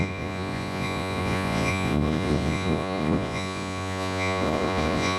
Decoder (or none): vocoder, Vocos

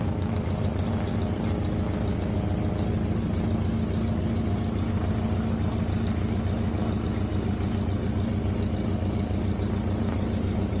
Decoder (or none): none